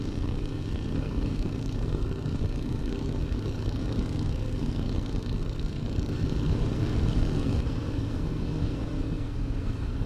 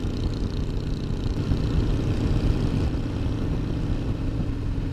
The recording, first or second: second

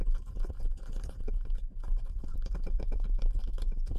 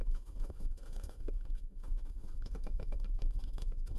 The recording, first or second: first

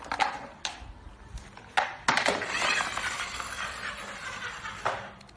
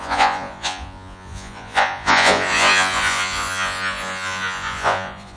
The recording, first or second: first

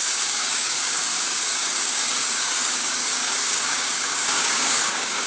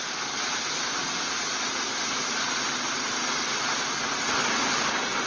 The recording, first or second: second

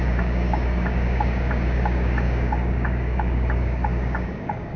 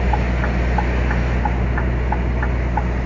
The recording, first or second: second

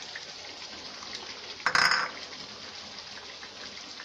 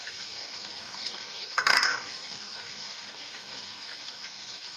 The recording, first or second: first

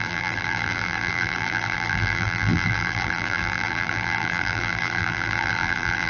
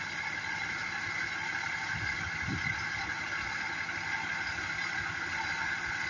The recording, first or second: second